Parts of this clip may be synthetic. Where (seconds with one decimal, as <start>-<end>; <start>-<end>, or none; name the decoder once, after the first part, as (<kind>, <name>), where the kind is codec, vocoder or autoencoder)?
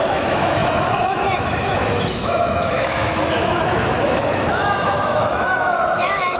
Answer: 0.0-6.4 (autoencoder, DAC-VAE)